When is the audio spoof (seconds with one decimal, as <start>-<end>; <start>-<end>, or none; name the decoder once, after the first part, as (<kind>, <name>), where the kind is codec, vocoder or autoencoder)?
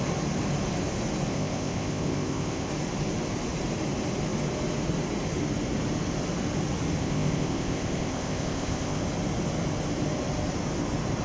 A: 1.3-2.7 (codec, ZipCodec); 7.0-9.0